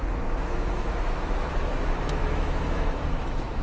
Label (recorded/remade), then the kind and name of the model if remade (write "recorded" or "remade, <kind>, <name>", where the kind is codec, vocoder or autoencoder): remade, autoencoder, DAC-VAE